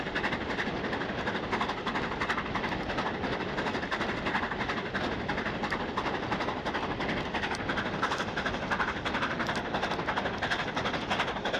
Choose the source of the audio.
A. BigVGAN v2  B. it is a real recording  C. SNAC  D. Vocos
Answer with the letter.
B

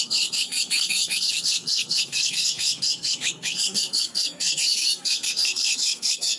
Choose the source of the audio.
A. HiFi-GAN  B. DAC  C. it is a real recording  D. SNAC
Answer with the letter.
D